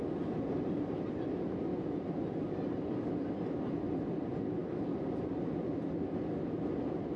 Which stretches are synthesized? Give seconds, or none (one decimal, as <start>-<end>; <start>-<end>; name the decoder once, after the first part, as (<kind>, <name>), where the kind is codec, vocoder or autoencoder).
none